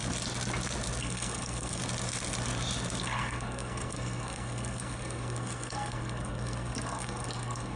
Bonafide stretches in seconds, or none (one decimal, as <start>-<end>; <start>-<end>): 0.0-1.0; 1.8-3.0